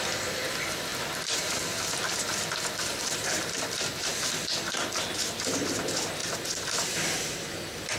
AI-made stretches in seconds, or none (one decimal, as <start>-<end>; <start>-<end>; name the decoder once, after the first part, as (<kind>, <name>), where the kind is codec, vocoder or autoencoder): 0.0-4.1 (vocoder, BigVGAN v2); 5.0-8.0